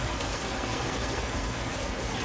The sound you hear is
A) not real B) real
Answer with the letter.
A